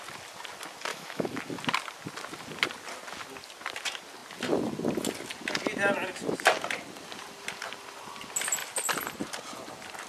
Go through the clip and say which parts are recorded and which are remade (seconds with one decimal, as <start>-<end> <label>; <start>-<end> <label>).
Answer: 0.0-0.9 recorded; 0.9-1.4 remade; 1.4-10.1 recorded